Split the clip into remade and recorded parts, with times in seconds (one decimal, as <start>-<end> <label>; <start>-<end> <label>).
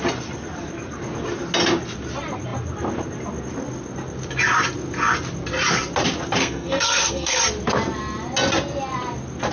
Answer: 0.0-6.4 recorded; 6.4-7.4 remade; 7.4-9.5 recorded